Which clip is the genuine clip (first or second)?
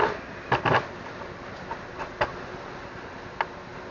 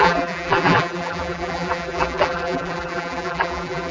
first